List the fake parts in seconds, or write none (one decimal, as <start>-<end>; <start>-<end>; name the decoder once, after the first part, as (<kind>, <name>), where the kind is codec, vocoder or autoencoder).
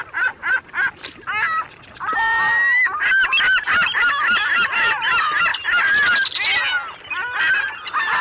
none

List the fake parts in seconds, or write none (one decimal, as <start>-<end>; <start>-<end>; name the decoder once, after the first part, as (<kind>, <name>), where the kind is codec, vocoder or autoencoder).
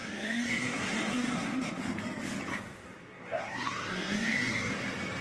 0.0-1.8 (codec, SNAC); 2.5-4.7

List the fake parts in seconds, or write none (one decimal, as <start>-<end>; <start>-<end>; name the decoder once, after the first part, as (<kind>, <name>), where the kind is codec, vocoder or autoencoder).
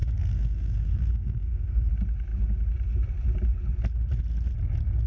0.0-1.9 (codec, SNAC)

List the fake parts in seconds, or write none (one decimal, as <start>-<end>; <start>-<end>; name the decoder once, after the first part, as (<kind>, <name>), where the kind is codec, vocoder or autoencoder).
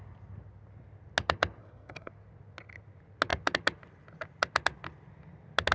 1.6-2.1 (codec, SNAC)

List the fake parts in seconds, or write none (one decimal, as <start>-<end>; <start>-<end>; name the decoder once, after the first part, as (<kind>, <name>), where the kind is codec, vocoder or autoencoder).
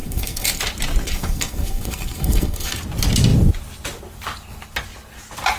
0.0-0.6 (codec, SNAC); 1.0-2.8